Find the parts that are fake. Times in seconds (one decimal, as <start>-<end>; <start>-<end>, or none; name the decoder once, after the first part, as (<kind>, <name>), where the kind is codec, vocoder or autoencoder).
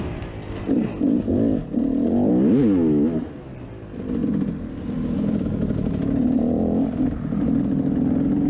none